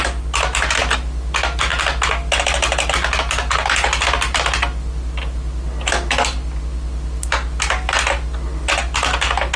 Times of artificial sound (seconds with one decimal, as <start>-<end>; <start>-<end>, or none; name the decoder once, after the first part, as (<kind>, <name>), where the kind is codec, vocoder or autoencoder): none